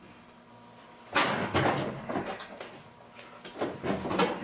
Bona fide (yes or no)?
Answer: yes